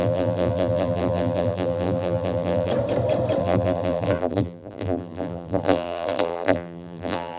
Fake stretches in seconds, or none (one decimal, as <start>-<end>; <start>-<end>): 0.0-2.7; 3.4-7.4